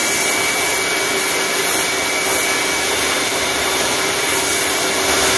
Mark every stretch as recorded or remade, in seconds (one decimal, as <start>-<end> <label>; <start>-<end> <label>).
0.0-3.3 recorded; 3.3-5.4 remade